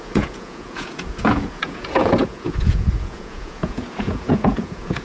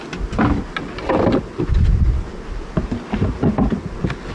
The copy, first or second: first